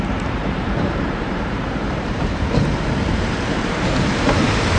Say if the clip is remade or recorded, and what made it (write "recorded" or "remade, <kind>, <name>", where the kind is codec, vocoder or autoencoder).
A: remade, vocoder, BigVGAN v2